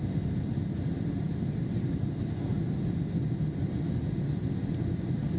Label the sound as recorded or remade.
recorded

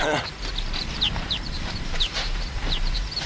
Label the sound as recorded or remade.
remade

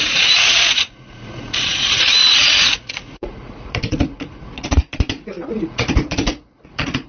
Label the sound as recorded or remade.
remade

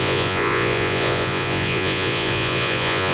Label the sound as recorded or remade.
remade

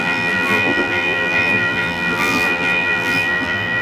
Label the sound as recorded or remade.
remade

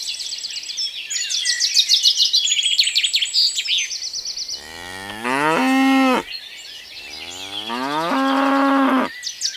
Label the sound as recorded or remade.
recorded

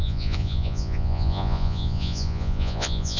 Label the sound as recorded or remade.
remade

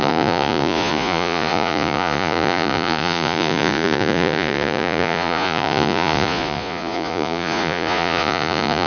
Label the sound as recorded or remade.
remade